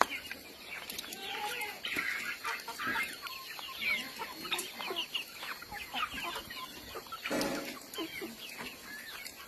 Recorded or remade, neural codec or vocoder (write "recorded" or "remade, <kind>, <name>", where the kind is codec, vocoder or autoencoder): recorded